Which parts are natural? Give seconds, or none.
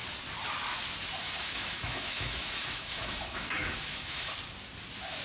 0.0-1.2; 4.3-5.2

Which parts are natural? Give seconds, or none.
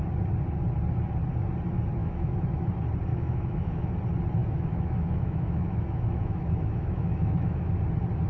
0.0-2.0; 2.7-3.1; 3.9-4.4; 7.7-8.3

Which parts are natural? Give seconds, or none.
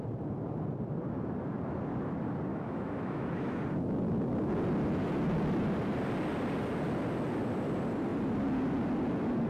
0.0-2.5; 3.6-9.5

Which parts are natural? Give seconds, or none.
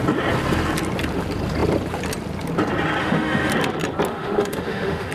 0.0-3.0; 3.5-4.1